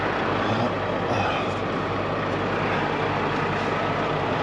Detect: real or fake real